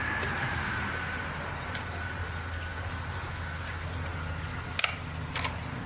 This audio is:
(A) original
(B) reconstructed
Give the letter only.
A